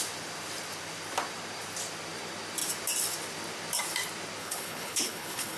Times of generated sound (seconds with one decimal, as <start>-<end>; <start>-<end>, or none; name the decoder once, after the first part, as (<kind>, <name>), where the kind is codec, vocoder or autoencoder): 4.4-5.6 (codec, HILCodec)